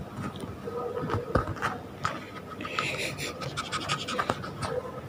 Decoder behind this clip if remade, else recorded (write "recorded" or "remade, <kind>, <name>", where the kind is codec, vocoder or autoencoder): recorded